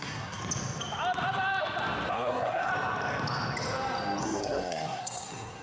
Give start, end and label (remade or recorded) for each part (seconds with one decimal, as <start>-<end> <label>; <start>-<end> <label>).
0.0-0.4 remade; 0.4-2.1 recorded; 2.1-2.7 remade; 2.7-4.2 recorded; 4.2-5.6 remade